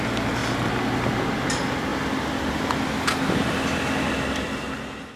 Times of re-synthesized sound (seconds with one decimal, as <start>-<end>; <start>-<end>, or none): none